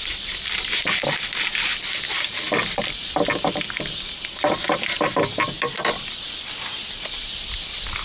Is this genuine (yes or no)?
yes